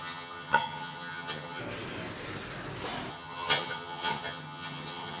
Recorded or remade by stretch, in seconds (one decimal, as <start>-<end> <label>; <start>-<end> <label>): 0.0-1.6 remade; 1.6-3.1 recorded; 3.1-5.2 remade